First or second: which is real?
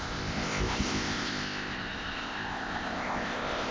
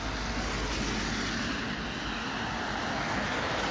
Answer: second